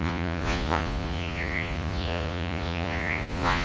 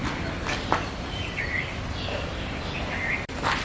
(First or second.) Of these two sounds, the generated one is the first